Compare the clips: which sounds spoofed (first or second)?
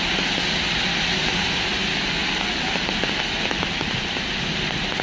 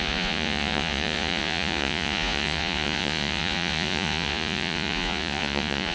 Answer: second